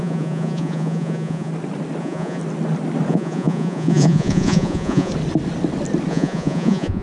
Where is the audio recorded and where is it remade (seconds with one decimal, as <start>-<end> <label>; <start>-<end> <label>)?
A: 0.0-1.5 remade; 1.5-2.0 recorded; 2.0-2.4 remade; 2.4-3.1 recorded; 3.1-5.1 remade; 5.1-6.1 recorded; 6.1-7.0 remade

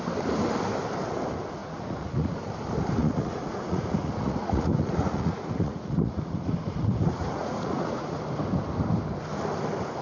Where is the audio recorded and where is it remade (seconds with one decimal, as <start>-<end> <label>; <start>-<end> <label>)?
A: 0.0-1.6 recorded; 1.6-2.5 remade; 2.5-3.0 recorded; 3.0-8.2 remade; 8.2-10.0 recorded

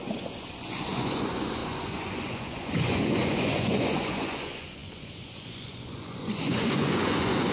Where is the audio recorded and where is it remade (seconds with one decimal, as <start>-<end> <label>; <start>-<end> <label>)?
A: 0.0-7.5 remade

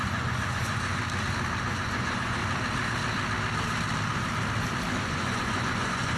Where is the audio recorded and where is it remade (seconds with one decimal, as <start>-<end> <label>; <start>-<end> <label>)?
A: 0.0-1.0 remade; 1.0-1.6 recorded; 1.6-2.4 remade; 2.4-5.0 recorded; 5.0-6.2 remade